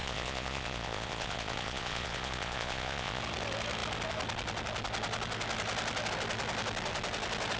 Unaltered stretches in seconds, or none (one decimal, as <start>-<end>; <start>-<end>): 3.2-7.6